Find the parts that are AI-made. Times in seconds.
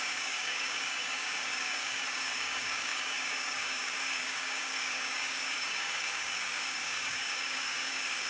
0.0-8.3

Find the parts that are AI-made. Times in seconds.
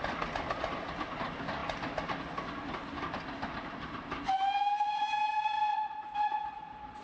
4.6-5.6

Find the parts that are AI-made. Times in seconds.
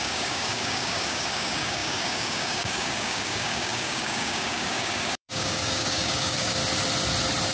0.0-6.6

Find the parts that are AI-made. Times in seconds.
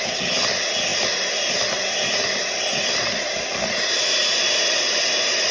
none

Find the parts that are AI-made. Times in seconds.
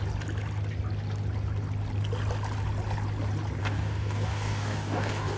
3.6-5.4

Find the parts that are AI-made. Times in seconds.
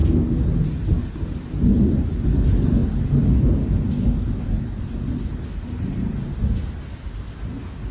none